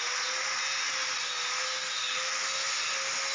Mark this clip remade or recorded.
recorded